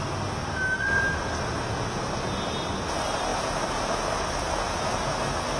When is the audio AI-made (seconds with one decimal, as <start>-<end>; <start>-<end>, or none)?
none